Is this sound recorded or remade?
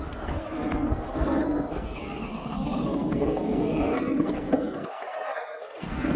remade